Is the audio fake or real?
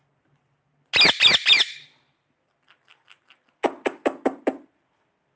real